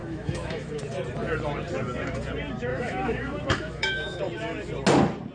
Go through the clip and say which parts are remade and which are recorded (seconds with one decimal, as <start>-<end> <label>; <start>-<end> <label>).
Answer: 0.0-0.8 remade; 0.8-2.7 recorded; 2.7-4.2 remade; 4.2-5.3 recorded